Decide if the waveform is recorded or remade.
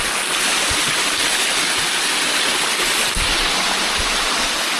recorded